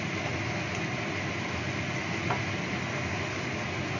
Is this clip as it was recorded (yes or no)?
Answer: yes